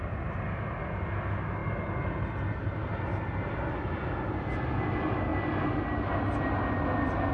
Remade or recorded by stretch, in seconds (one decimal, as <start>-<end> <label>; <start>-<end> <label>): 0.0-7.3 recorded